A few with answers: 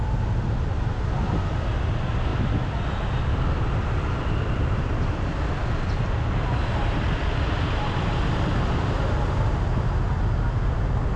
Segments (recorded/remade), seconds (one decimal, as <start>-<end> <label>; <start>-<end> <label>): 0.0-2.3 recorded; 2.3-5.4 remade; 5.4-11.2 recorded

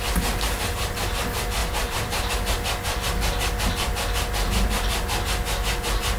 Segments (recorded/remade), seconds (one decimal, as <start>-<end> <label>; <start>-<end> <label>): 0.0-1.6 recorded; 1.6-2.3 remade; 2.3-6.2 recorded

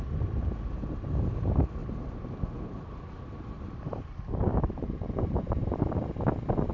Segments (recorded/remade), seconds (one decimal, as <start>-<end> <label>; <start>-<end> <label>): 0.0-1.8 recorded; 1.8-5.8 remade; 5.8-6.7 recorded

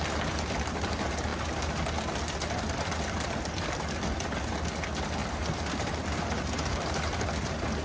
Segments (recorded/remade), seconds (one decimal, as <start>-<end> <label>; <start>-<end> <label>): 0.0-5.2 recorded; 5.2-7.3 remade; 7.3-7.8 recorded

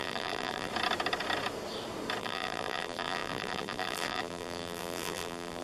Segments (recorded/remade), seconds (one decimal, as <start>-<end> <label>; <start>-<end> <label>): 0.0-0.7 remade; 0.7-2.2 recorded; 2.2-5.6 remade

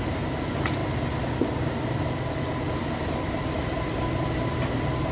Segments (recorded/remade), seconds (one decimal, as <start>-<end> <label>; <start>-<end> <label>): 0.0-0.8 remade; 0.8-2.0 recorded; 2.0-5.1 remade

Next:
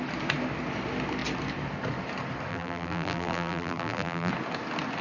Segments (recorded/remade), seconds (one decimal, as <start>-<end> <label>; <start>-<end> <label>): 0.0-2.5 recorded; 2.5-4.3 remade; 4.3-5.0 recorded